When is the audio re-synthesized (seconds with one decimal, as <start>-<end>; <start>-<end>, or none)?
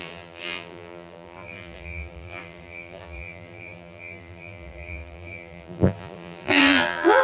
0.0-7.2